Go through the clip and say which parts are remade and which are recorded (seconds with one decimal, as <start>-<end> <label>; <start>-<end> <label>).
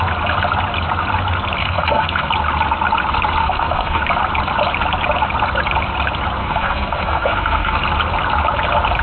0.0-1.6 recorded; 1.6-2.3 remade; 2.3-3.4 recorded; 3.4-4.0 remade; 4.0-6.4 recorded; 6.4-7.8 remade; 7.8-9.0 recorded